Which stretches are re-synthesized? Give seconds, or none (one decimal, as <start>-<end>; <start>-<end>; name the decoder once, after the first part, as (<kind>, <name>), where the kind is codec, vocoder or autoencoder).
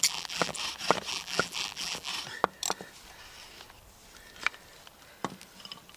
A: 0.0-0.6 (vocoder, BigVGAN v2); 1.1-2.1